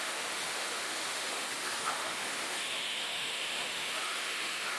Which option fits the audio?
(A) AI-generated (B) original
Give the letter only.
A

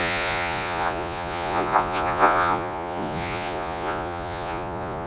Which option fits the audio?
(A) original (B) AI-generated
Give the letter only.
B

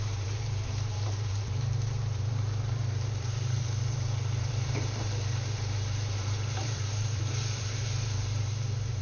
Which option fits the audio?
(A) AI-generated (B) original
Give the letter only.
A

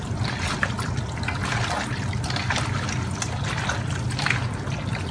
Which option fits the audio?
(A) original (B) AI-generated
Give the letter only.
A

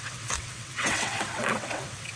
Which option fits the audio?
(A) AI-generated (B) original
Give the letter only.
A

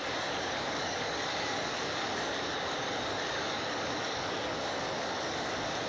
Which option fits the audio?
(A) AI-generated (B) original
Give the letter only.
A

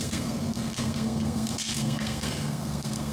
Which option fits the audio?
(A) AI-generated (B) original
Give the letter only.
A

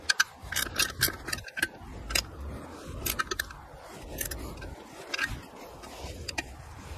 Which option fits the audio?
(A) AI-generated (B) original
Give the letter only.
B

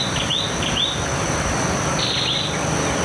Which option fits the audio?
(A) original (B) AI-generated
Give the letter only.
A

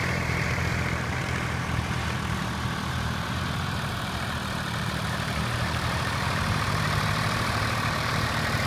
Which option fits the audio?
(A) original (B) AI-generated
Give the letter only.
B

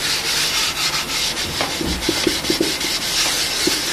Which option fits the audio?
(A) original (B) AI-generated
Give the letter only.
A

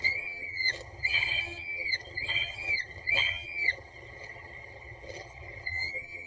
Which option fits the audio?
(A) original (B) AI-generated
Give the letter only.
B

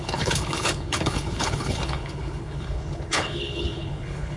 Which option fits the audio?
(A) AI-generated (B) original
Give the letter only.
A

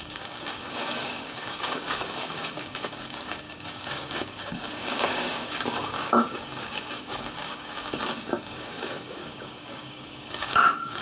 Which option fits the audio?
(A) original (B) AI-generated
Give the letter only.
B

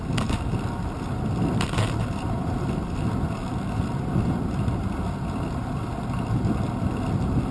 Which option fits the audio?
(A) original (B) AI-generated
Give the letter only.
A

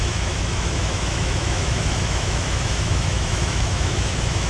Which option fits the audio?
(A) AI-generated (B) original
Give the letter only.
A